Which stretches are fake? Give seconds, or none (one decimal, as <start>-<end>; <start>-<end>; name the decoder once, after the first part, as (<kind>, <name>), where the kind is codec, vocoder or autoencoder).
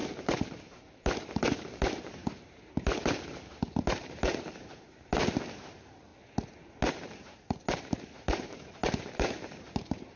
0.0-6.1 (vocoder, BigVGAN v2); 6.9-10.2